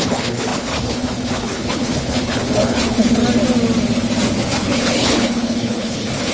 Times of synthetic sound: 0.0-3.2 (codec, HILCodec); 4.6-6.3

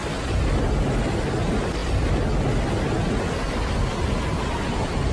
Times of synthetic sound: none

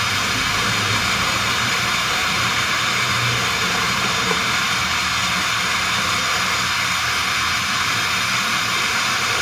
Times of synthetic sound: 0.0-5.2 (vocoder, BigVGAN v2); 8.6-9.4

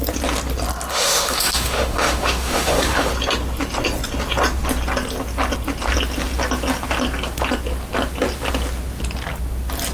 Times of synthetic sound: 0.9-3.1 (autoencoder, DAC-VAE)

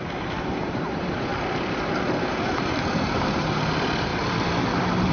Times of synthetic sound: 0.0-1.3 (vocoder, BigVGAN v2); 2.3-4.1